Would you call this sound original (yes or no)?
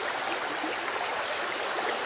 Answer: yes